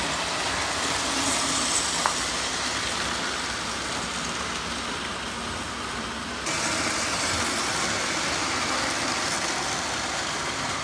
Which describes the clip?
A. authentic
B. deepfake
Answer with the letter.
A